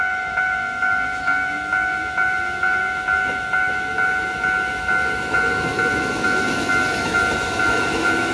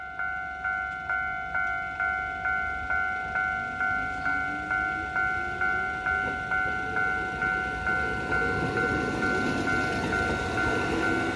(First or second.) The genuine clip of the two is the second